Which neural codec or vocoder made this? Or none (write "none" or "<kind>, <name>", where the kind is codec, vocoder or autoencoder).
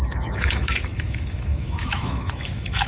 autoencoder, DAC-VAE